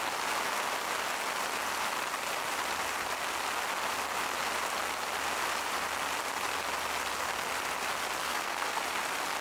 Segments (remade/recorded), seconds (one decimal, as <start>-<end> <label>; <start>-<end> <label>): 0.0-8.2 recorded; 8.2-8.8 remade; 8.8-9.4 recorded